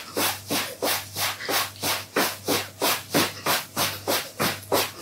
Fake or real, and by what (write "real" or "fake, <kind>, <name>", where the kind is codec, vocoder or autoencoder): real